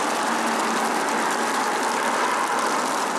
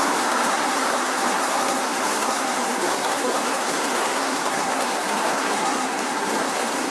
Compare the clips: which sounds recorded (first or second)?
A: first